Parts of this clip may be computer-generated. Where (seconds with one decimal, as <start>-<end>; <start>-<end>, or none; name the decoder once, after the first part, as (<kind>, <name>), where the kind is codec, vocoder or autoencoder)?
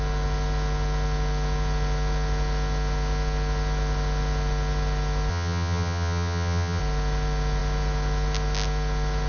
5.3-6.8 (vocoder, HiFi-GAN)